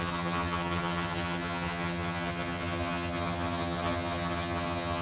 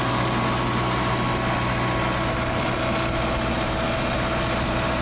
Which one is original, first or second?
second